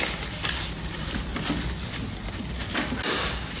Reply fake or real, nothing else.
real